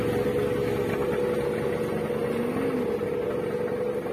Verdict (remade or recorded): recorded